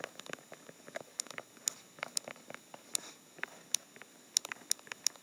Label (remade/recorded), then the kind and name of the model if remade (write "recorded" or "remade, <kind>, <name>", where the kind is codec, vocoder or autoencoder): remade, codec, DAC